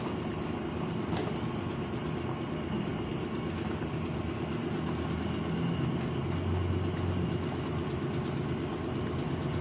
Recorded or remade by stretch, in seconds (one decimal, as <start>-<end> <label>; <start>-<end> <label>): 0.0-9.6 recorded